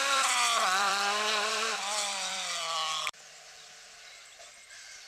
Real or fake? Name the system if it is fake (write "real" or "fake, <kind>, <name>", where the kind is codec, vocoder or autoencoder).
fake, vocoder, BigVGAN v2